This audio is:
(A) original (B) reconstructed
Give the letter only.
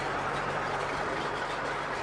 A